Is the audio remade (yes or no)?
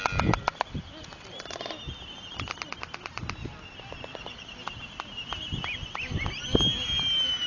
no